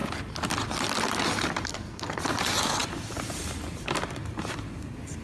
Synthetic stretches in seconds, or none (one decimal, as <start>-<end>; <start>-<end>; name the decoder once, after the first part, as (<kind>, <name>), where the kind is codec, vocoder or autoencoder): 1.7-2.2 (codec, SNAC)